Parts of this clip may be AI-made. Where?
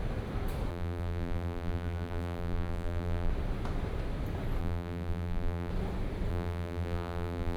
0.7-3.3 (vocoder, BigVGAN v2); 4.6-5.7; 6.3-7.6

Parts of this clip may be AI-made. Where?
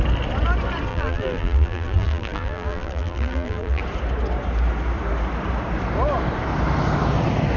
0.9-3.8 (vocoder, BigVGAN v2)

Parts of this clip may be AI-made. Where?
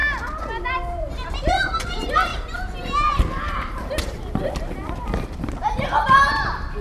0.7-2.3 (vocoder, BigVGAN v2)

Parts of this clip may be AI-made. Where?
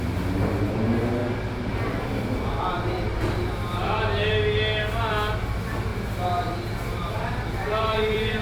0.0-3.1 (vocoder, BigVGAN v2); 5.1-5.9; 6.6-8.4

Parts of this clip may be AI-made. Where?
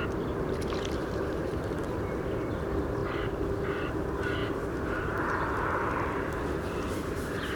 1.0-1.6 (vocoder, BigVGAN v2); 3.0-3.9; 4.4-6.4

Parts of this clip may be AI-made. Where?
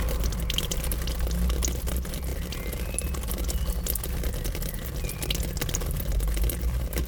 none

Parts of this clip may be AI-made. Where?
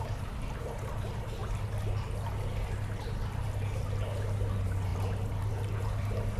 none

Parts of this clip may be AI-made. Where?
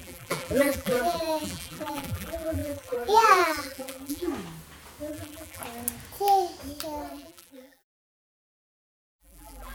0.0-4.3 (vocoder, BigVGAN v2); 5.1-5.6; 7.1-9.7